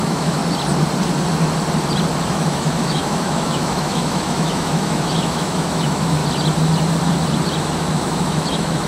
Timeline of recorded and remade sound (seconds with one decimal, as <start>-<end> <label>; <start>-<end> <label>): 0.0-0.4 remade; 0.4-2.3 recorded; 2.3-6.2 remade; 6.2-7.6 recorded; 7.6-8.9 remade